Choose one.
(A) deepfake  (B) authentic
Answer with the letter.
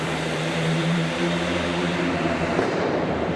A